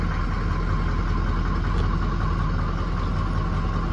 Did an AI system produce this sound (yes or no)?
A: no